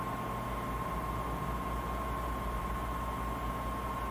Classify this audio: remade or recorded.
recorded